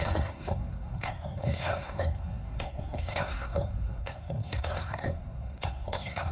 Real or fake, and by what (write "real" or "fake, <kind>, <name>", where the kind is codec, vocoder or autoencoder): fake, codec, SNAC